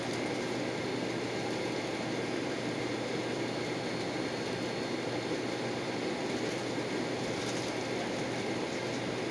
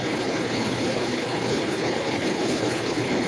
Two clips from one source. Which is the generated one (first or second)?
second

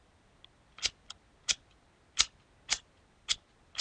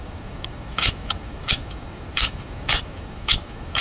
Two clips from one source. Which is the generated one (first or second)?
second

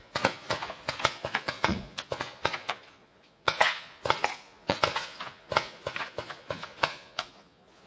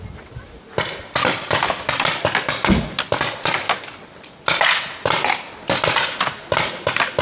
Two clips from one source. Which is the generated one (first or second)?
first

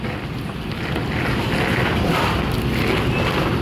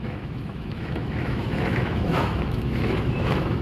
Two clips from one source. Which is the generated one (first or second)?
second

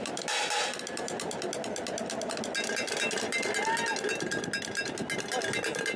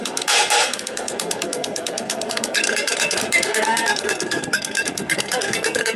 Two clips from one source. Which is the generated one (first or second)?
second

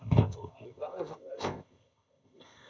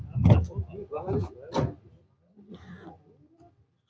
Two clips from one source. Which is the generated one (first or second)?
first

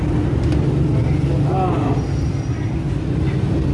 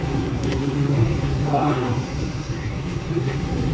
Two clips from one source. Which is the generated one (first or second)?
second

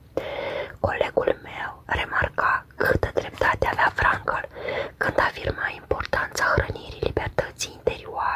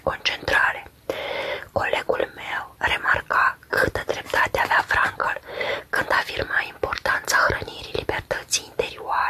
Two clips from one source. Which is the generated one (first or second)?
first